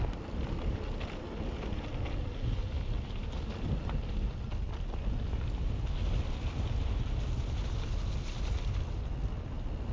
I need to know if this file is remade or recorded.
recorded